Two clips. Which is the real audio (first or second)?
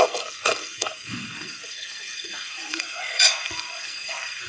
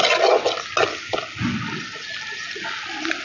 second